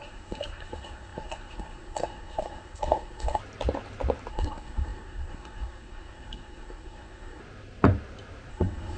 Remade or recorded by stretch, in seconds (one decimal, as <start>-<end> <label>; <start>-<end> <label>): 0.0-3.4 remade; 3.4-4.3 recorded; 4.3-7.4 remade; 7.4-8.5 recorded; 8.5-9.0 remade